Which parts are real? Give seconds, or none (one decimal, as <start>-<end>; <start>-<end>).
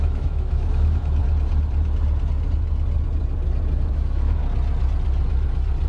1.2-3.9; 4.4-5.9